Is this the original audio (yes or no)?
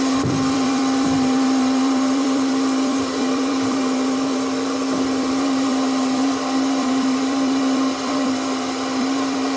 no